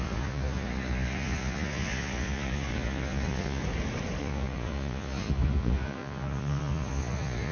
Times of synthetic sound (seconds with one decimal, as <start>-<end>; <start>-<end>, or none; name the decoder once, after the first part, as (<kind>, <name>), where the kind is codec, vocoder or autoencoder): 0.0-3.6 (vocoder, Vocos); 4.2-7.5